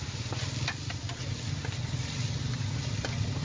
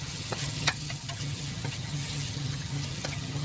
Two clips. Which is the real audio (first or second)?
first